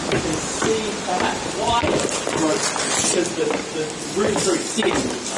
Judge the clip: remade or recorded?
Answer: remade